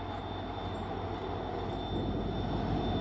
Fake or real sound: real